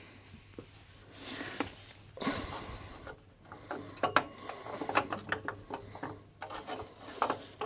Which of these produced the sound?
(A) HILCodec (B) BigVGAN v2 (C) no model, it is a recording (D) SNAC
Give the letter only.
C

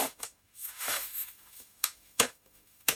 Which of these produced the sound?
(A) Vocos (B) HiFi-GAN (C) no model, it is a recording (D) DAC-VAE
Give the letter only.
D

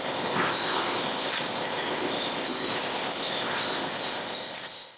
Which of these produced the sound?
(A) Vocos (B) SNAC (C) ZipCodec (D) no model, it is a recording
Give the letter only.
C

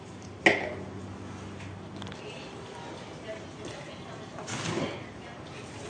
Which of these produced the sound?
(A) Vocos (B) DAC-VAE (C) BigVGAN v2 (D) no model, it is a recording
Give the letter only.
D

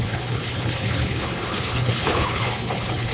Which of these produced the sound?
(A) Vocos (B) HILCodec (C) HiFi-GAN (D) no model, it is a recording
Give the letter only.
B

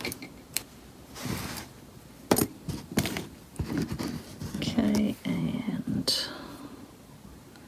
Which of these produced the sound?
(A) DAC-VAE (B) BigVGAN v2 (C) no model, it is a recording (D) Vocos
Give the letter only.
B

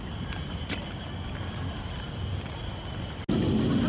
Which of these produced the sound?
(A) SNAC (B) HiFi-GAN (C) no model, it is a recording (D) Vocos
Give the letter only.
C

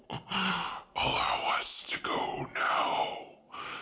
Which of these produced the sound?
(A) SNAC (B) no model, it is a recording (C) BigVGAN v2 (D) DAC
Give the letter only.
B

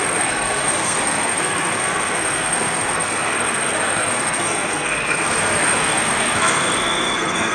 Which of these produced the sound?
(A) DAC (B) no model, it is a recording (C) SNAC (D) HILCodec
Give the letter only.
C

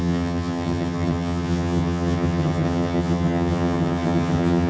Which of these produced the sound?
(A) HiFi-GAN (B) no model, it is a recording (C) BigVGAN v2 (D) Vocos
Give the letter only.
A